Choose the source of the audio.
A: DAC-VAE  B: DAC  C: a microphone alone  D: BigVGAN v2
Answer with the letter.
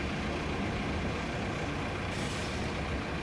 C